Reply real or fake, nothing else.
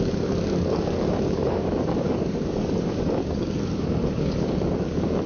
fake